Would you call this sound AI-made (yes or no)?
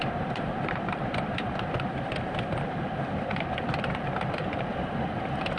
no